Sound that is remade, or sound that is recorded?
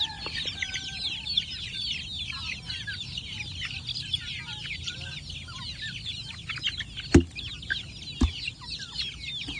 recorded